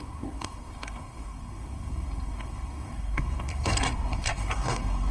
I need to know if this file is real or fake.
fake